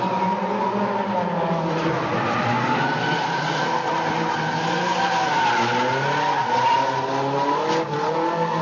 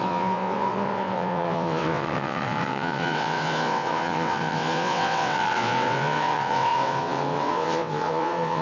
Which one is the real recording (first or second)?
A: first